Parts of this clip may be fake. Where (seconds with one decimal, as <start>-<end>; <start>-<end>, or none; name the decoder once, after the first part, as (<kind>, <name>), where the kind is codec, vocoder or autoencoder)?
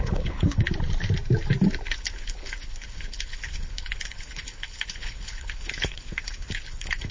0.0-0.7 (codec, HILCodec); 1.8-7.1